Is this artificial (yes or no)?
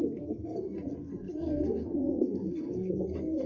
yes